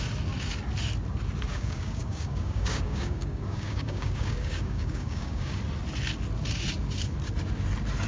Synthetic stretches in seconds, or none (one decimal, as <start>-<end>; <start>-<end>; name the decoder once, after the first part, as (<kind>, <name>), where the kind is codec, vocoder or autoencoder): 1.5-5.6 (codec, DAC)